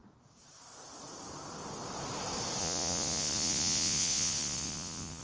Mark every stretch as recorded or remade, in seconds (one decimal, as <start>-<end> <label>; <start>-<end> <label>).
0.0-2.6 recorded; 2.6-5.2 remade